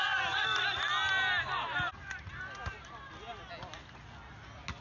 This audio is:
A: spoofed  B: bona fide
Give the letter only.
B